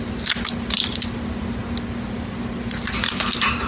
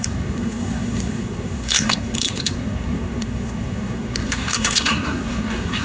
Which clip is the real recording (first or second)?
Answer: first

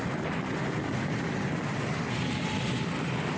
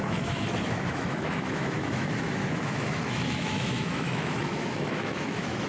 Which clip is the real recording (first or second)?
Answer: first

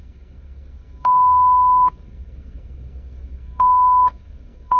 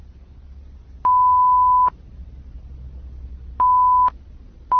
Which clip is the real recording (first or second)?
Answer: second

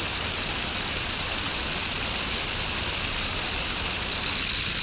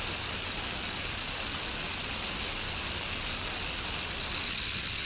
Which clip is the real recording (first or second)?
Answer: second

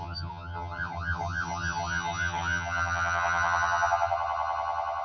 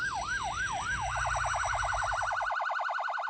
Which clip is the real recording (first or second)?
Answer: second